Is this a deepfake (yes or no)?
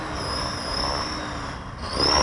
no